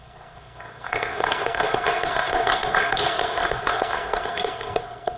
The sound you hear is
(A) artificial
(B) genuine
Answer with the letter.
A